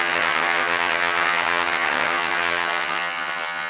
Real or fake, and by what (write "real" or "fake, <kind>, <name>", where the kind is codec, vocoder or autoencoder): fake, vocoder, HiFi-GAN